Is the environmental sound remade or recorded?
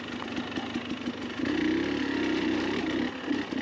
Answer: recorded